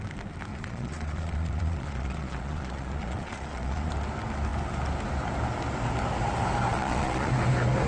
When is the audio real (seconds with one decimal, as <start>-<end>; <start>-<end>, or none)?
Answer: 0.0-0.5; 3.9-6.7; 7.3-7.9